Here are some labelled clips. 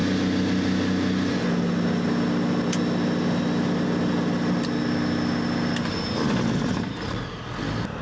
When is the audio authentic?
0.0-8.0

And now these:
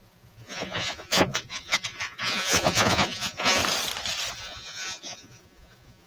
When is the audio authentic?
3.6-4.3

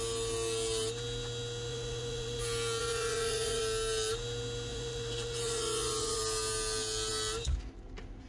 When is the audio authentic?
0.0-1.7; 2.4-2.8; 3.6-4.7; 6.2-8.3

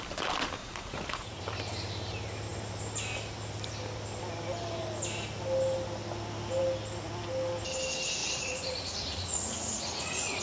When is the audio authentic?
0.0-0.6; 1.4-8.2

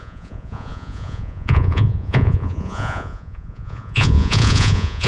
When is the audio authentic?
none

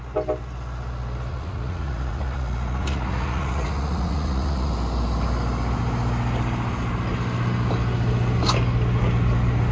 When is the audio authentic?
0.0-1.3; 4.7-9.7

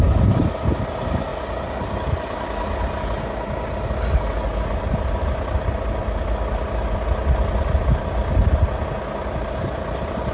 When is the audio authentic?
0.0-10.3

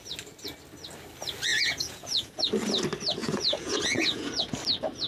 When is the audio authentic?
0.0-1.5; 2.4-3.2; 4.4-5.1